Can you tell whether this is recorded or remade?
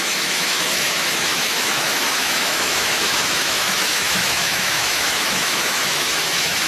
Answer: remade